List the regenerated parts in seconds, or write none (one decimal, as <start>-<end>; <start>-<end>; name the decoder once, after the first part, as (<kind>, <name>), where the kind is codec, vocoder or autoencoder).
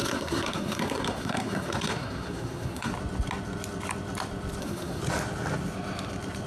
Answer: 0.0-2.9 (codec, SNAC); 4.6-5.0